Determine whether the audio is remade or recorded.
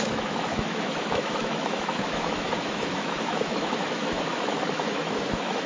remade